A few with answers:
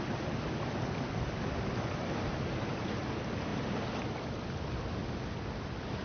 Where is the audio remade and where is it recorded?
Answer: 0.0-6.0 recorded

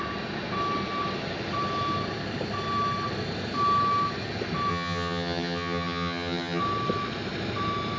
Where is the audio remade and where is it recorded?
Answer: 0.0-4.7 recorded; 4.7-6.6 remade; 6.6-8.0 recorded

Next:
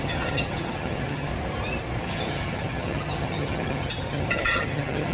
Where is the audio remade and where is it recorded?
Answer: 0.0-1.3 remade; 1.3-2.0 recorded; 2.0-5.1 remade